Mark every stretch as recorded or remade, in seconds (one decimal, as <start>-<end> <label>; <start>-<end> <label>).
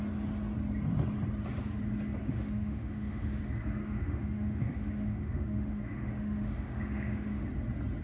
0.0-2.2 recorded; 2.2-3.4 remade; 3.4-3.8 recorded; 3.8-7.5 remade; 7.5-8.0 recorded